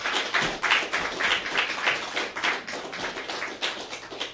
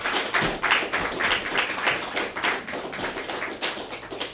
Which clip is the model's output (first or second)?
second